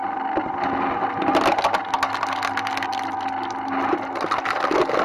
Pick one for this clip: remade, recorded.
recorded